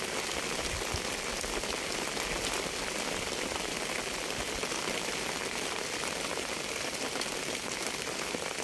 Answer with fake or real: real